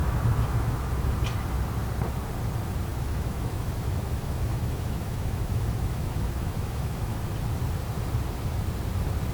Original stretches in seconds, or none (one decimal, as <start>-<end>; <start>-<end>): 0.9-2.9; 7.3-9.3